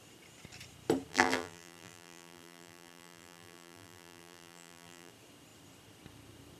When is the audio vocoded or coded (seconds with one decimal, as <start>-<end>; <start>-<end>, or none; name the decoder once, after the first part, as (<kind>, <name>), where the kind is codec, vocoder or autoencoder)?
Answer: 1.1-5.1 (vocoder, BigVGAN v2)